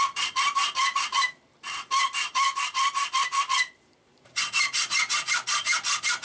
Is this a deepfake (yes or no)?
yes